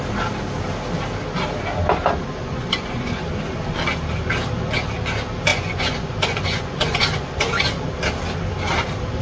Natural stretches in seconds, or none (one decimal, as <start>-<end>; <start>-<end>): 0.0-2.4; 3.2-5.5; 7.8-9.2